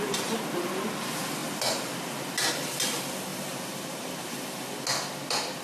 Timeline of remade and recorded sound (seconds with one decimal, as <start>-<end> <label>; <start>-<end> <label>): 0.0-3.3 recorded; 3.3-4.7 remade; 4.7-5.6 recorded

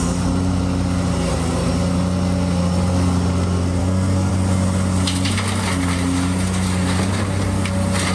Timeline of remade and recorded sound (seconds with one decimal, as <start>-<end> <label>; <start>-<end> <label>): 0.0-3.8 recorded; 3.8-4.3 remade; 4.3-8.1 recorded

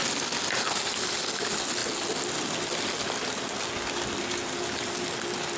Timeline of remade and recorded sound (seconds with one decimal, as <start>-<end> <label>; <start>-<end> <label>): 0.0-5.6 recorded